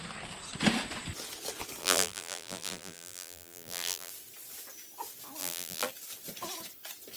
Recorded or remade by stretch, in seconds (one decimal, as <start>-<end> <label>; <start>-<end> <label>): 0.0-1.8 recorded; 1.8-4.1 remade; 4.1-5.4 recorded; 5.4-5.9 remade; 5.9-7.2 recorded